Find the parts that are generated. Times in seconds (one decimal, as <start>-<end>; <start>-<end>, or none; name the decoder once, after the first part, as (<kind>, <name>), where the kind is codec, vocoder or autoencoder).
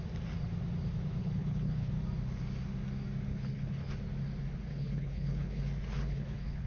1.2-1.9 (codec, HILCodec); 3.3-3.9; 4.7-5.6; 6.0-6.7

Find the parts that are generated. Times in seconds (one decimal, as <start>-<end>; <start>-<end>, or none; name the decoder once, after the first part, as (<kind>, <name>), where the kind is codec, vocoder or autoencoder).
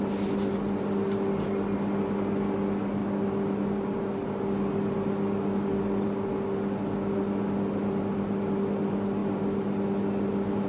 none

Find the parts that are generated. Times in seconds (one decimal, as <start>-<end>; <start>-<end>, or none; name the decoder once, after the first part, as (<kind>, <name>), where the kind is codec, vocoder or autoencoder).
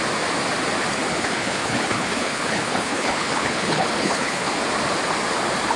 1.1-4.6 (codec, HILCodec)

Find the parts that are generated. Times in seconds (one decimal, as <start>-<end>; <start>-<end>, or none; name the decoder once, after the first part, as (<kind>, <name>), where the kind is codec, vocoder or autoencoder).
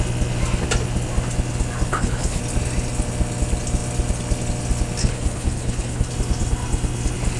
1.9-2.4 (codec, HILCodec); 5.0-6.1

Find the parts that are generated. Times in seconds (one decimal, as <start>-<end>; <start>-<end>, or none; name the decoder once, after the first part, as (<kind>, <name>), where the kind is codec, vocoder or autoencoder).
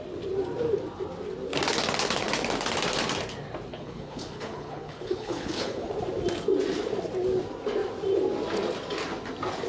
3.7-5.9 (codec, HILCodec)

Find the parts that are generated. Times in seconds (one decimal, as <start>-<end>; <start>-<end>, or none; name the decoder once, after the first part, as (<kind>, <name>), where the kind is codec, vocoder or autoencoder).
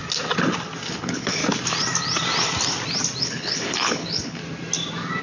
0.9-1.4 (codec, HILCodec); 3.2-4.4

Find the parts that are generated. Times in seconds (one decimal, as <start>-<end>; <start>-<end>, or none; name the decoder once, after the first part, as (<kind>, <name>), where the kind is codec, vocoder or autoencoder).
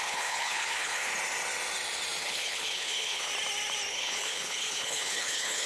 0.0-1.1 (codec, HILCodec); 2.2-3.3; 3.9-5.7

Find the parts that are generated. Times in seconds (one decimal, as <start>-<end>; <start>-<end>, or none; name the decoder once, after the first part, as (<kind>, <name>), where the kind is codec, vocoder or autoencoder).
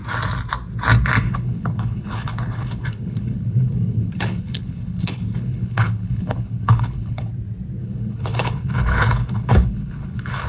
1.2-7.3 (codec, HILCodec); 7.8-10.5